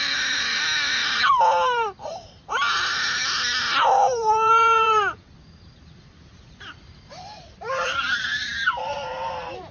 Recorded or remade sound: remade